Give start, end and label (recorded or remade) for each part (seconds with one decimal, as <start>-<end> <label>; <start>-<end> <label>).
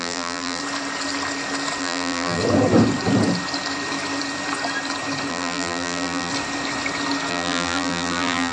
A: 0.0-0.6 remade; 0.6-1.8 recorded; 1.8-2.4 remade; 2.4-5.3 recorded; 5.3-6.3 remade; 6.3-7.3 recorded; 7.3-8.5 remade